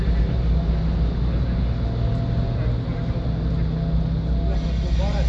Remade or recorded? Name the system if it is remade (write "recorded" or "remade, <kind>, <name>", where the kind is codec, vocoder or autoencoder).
recorded